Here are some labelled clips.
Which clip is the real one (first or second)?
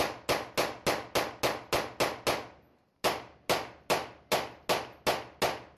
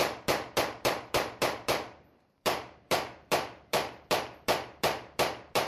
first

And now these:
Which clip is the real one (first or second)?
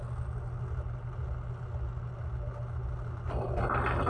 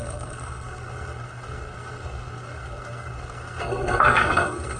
first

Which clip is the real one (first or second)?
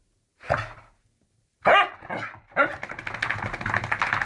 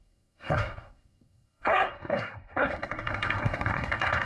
first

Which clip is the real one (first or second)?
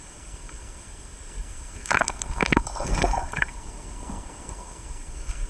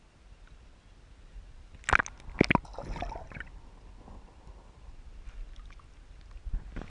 second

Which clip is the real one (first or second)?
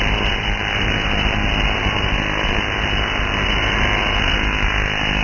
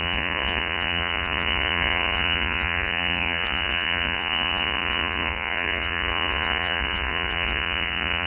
first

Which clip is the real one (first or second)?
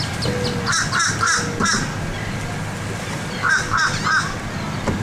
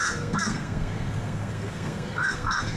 first